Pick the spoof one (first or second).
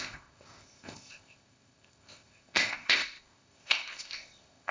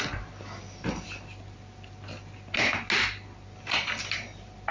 first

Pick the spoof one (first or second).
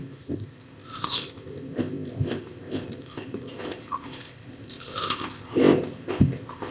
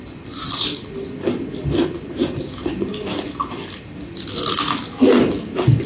first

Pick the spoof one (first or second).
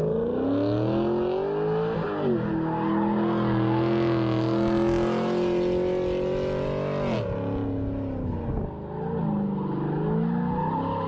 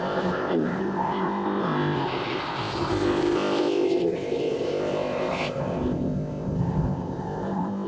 second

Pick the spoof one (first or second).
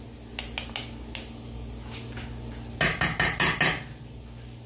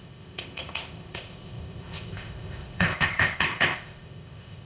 second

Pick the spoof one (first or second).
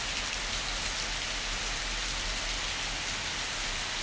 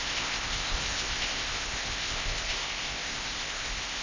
second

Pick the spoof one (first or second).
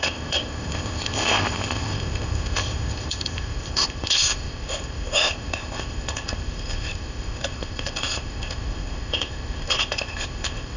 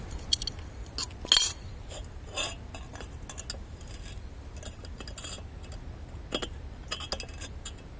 first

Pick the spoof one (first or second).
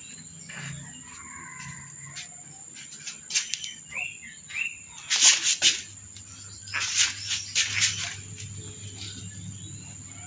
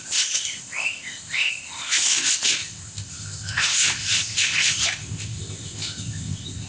second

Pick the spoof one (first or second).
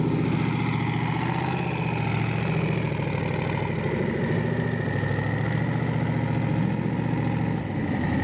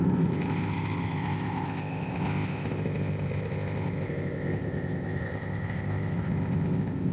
second